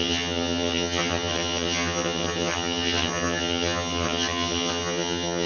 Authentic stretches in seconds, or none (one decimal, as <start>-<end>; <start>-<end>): none